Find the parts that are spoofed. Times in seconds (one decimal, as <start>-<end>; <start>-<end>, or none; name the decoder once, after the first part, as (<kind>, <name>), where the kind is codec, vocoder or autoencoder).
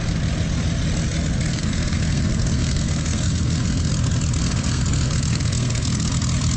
1.5-3.9 (codec, SNAC); 4.4-6.1